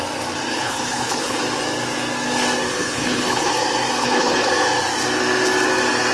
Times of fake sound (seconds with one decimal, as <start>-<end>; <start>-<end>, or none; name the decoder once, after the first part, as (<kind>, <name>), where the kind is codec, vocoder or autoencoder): 0.5-1.4 (codec, HILCodec); 2.7-3.5; 4.0-4.5